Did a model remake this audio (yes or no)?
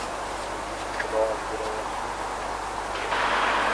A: no